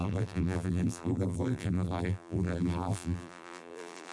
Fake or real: fake